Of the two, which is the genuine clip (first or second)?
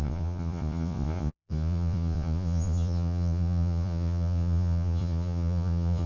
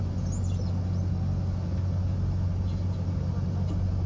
second